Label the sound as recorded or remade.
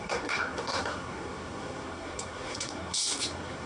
remade